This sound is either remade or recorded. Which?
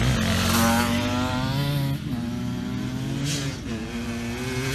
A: recorded